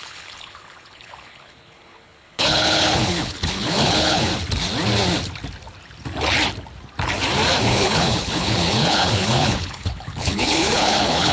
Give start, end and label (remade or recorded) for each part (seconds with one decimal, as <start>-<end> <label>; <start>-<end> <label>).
0.0-4.3 remade; 4.3-7.6 recorded; 7.6-11.3 remade

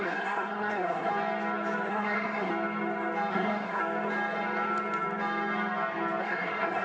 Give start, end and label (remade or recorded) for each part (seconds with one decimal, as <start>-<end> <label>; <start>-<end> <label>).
0.0-1.1 remade; 1.1-1.9 recorded; 1.9-2.5 remade; 2.5-3.3 recorded; 3.3-3.8 remade; 3.8-6.2 recorded; 6.2-6.8 remade

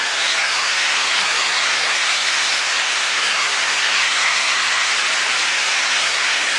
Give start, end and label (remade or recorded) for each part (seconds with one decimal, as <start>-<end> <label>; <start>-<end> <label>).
0.0-4.9 remade; 4.9-5.5 recorded; 5.5-6.6 remade

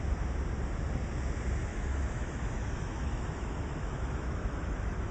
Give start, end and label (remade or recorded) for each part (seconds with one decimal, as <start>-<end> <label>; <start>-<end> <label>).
0.0-1.7 recorded; 1.7-5.1 remade

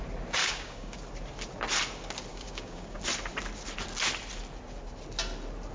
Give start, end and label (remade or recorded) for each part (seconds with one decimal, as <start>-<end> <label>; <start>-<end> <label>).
0.0-0.4 recorded; 0.4-1.0 remade; 1.0-2.3 recorded; 2.3-3.0 remade; 3.0-5.7 recorded